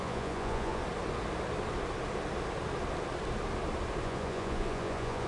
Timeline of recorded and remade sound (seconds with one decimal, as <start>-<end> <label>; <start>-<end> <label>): 0.0-0.8 remade; 0.8-4.0 recorded; 4.0-5.3 remade